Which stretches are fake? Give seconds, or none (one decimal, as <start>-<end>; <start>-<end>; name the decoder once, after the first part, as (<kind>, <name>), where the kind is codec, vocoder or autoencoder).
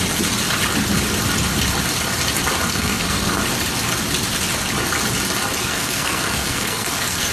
2.7-3.4 (codec, SNAC); 5.6-7.3